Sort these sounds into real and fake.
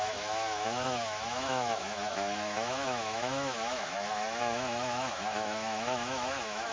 fake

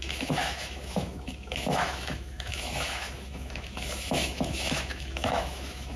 fake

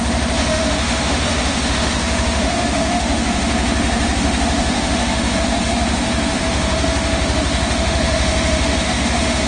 fake